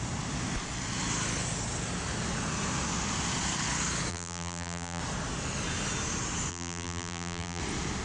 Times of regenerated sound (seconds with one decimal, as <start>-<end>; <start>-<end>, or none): 4.1-5.0; 6.5-7.6